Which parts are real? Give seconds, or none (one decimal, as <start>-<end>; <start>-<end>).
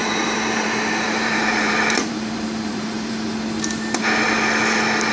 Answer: 3.1-5.1